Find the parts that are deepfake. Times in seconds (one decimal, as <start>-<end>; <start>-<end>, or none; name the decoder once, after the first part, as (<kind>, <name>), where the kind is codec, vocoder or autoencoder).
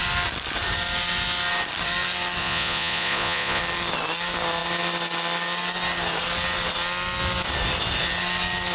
2.4-3.6 (vocoder, Vocos)